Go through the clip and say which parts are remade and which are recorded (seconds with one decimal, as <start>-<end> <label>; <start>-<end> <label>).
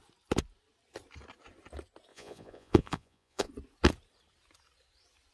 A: 0.0-2.1 recorded; 2.1-3.5 remade; 3.5-5.3 recorded